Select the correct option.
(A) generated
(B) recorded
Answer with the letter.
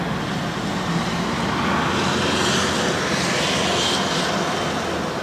B